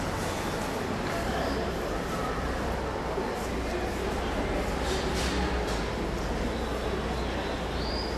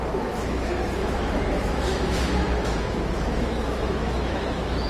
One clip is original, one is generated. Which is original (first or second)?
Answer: first